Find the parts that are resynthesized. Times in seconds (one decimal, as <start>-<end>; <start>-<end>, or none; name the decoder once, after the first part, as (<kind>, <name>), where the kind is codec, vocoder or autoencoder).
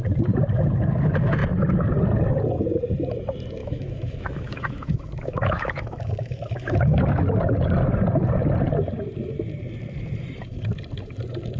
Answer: 3.6-7.0 (autoencoder, DAC-VAE)